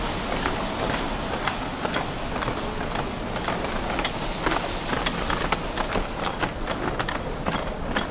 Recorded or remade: recorded